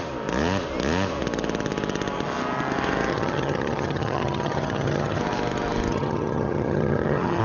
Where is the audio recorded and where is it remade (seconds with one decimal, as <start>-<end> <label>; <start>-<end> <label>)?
0.0-3.1 recorded; 3.1-5.2 remade; 5.2-5.9 recorded; 5.9-7.4 remade